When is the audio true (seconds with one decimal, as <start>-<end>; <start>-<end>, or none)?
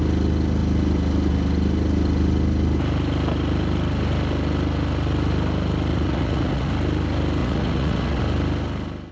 0.0-5.9; 6.7-7.4; 8.2-9.1